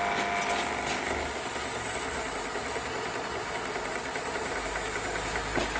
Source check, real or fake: real